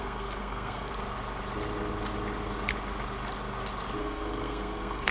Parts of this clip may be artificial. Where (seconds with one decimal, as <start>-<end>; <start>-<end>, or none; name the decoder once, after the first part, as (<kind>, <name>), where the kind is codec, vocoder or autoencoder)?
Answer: 0.0-0.9 (codec, SNAC); 4.0-5.1